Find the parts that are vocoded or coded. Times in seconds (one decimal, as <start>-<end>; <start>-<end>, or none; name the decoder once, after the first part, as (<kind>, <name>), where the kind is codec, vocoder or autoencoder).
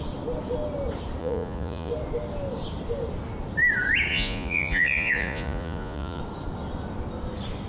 1.2-1.9 (vocoder, Vocos); 4.1-6.2